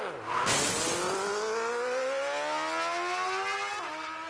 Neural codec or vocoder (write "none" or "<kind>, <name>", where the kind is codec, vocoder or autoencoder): none